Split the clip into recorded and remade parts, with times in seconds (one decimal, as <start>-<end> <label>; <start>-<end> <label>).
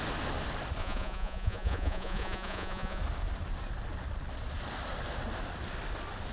0.0-0.8 recorded; 0.8-3.0 remade; 3.0-6.3 recorded